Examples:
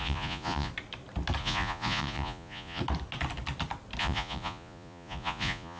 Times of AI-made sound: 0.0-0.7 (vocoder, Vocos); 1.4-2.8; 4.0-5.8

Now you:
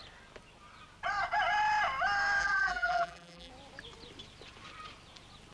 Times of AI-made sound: 2.4-3.5 (vocoder, BigVGAN v2)

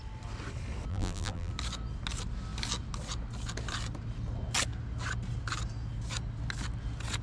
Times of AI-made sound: 0.9-1.5 (vocoder, BigVGAN v2)

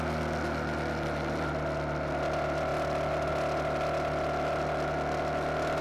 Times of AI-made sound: none

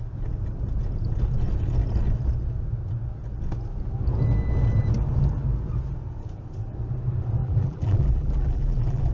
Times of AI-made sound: 7.4-9.1 (vocoder, BigVGAN v2)

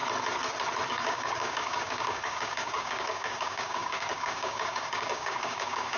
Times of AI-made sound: 0.9-6.0 (codec, DAC)

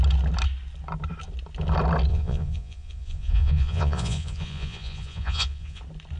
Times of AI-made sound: 2.1-5.8 (vocoder, Vocos)

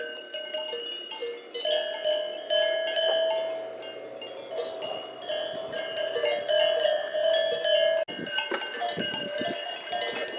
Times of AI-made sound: 8.8-9.5 (vocoder, BigVGAN v2)